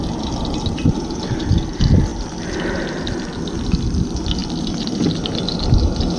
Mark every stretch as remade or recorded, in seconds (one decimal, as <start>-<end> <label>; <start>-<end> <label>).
0.0-4.4 recorded; 4.4-5.1 remade; 5.1-6.2 recorded